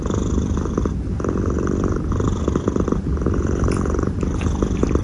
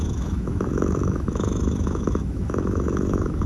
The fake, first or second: second